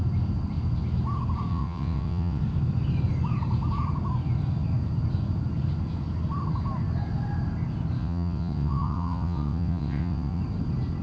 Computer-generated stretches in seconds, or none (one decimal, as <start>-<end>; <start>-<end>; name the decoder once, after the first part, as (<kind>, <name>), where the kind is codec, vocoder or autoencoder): 1.5-2.4 (vocoder, WaveNeXt); 8.0-10.4